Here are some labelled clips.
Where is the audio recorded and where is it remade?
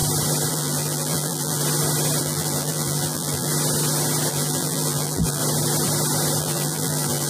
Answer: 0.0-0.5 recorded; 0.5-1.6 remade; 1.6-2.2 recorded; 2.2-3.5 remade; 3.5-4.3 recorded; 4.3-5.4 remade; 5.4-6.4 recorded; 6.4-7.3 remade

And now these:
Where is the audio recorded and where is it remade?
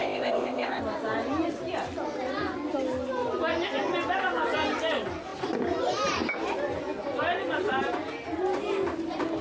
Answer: 0.0-0.8 remade; 0.8-9.4 recorded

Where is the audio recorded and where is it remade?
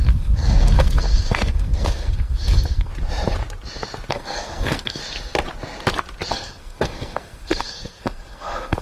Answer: 0.0-2.9 remade; 2.9-4.1 recorded; 4.1-5.0 remade; 5.0-6.3 recorded; 6.3-8.8 remade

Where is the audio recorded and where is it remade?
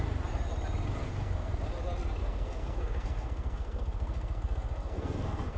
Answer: 0.0-1.0 recorded; 1.0-1.6 remade; 1.6-2.2 recorded; 2.2-5.6 remade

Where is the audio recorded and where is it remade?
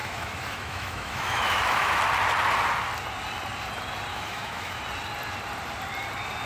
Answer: 0.0-2.0 remade; 2.0-4.1 recorded; 4.1-4.8 remade; 4.8-6.5 recorded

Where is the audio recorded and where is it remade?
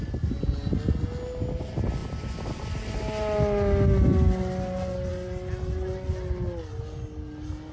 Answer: 0.0-7.7 recorded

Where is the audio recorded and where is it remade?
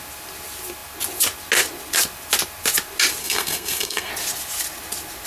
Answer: 0.0-3.2 recorded; 3.2-4.1 remade; 4.1-5.3 recorded